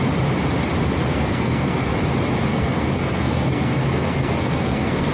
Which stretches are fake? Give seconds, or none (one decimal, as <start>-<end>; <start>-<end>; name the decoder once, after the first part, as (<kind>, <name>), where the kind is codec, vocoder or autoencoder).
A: 1.1-1.9 (codec, SNAC); 2.5-5.1